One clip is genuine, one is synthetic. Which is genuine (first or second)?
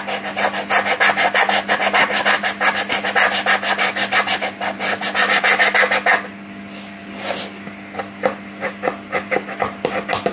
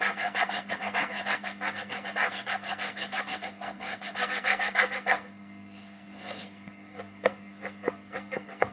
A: first